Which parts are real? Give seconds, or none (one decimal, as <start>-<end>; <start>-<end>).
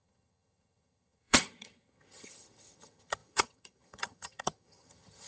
none